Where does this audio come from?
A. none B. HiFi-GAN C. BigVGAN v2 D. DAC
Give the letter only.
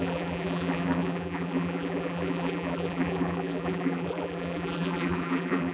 C